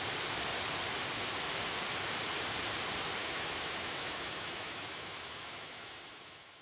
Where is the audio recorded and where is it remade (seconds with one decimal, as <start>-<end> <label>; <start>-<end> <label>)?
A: 0.0-3.2 recorded; 3.2-6.6 remade